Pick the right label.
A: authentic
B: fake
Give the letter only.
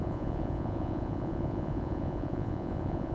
B